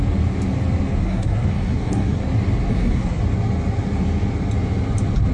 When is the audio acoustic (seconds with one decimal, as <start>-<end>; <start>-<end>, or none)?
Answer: 0.0-1.0; 2.2-2.7; 3.2-5.3